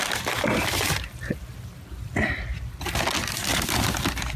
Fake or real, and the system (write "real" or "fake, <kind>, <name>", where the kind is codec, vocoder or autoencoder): real